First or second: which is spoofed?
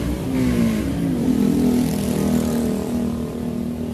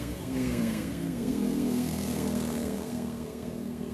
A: second